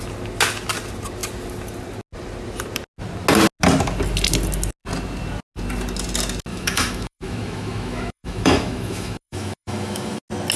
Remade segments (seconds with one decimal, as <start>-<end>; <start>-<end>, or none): 6.5-10.2

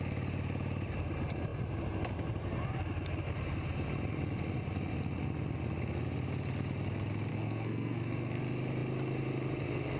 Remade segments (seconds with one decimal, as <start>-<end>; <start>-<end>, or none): 7.3-8.4